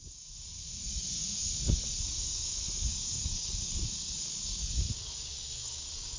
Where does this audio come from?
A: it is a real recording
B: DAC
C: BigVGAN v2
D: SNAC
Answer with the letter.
B